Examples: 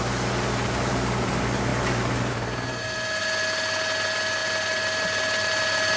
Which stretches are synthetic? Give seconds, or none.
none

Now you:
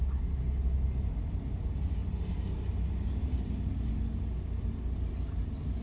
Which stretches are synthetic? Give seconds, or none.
none

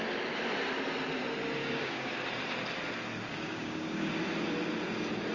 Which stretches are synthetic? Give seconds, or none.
1.6-2.1 (codec, DAC); 3.3-4.1